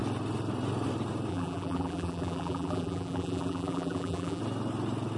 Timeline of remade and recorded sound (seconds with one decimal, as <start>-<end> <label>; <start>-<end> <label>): 0.0-1.3 recorded; 1.3-4.4 remade; 4.4-5.2 recorded